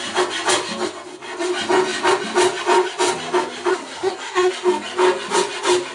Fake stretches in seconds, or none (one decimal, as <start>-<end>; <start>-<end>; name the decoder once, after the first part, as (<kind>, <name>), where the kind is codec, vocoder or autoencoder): 3.7-4.5 (codec, SNAC)